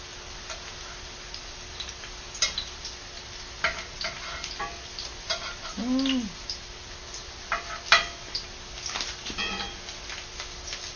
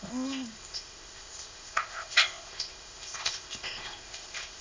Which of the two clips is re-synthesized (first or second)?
second